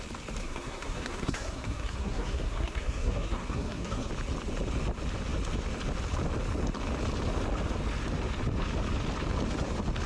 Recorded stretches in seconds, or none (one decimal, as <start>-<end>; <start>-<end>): 0.0-0.4; 4.1-10.1

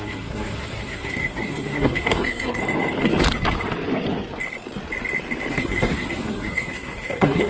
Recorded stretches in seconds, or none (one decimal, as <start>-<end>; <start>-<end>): 2.6-5.5